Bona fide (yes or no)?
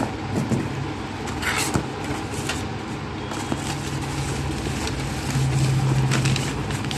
yes